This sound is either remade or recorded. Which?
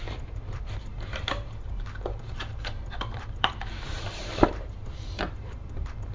remade